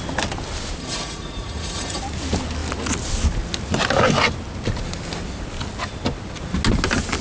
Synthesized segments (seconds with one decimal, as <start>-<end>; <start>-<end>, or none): 0.8-2.0